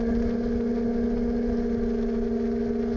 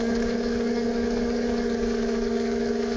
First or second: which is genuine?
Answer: first